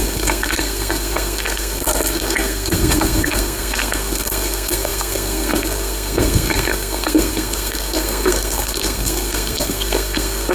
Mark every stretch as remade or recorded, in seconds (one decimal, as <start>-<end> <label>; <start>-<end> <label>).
0.0-10.5 remade